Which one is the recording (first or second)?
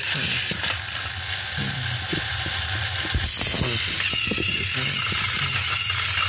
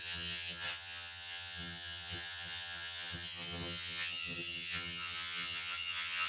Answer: first